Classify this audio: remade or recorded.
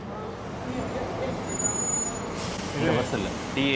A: recorded